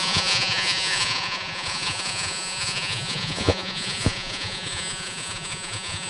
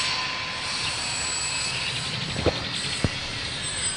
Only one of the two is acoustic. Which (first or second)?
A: second